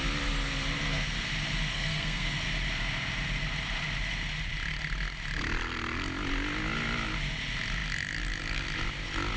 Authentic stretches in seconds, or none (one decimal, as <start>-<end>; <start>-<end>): 0.0-1.7; 2.3-9.4